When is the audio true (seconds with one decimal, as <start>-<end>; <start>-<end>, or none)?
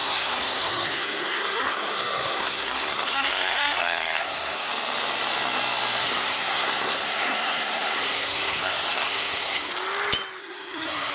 4.7-6.0; 9.7-10.4